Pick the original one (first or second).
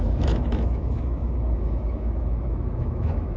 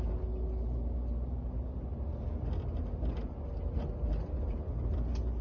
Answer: second